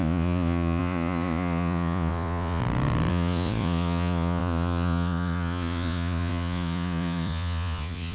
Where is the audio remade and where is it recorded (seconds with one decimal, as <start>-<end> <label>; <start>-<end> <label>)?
0.0-2.6 remade; 2.6-3.1 recorded; 3.1-8.1 remade